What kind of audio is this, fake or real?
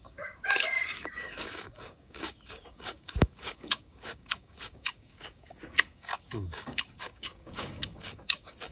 fake